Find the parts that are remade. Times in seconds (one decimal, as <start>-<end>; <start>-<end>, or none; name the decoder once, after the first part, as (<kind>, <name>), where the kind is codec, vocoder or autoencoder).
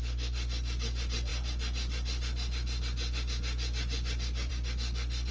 none